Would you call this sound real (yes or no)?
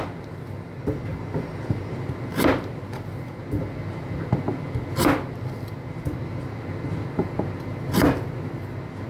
yes